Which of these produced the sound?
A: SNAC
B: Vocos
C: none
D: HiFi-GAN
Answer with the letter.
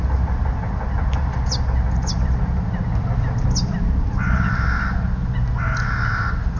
C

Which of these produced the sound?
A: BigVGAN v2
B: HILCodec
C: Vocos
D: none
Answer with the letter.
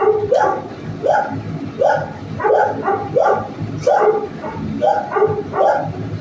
D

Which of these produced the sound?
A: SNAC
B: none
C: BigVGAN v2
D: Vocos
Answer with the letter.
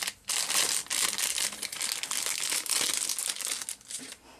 B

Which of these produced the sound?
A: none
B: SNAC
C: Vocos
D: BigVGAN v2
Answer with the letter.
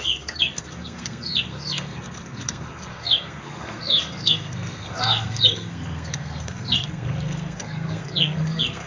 B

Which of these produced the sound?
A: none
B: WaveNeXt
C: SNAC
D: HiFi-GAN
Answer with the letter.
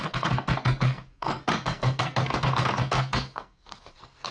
C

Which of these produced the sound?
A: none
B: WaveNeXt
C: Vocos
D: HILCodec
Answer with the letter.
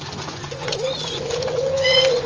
C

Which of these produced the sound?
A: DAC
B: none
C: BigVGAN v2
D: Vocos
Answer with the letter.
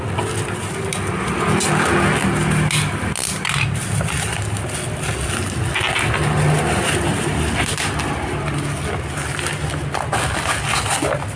B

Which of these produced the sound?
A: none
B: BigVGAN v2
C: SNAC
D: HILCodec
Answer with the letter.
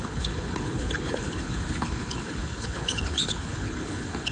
D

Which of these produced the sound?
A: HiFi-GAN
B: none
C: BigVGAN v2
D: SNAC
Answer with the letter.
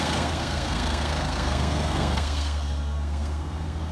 D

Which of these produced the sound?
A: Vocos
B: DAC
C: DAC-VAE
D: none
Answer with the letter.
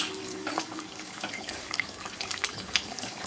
B